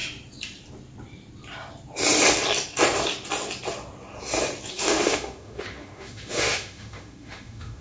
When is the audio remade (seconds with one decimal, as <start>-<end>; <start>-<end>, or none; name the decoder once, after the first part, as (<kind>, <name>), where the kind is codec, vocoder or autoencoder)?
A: 4.7-7.8 (autoencoder, DAC-VAE)